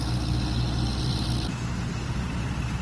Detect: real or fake real